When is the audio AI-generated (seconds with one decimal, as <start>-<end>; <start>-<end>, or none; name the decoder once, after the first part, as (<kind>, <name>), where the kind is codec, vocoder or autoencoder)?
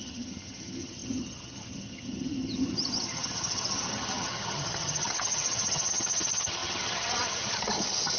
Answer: 0.0-8.2 (vocoder, HiFi-GAN)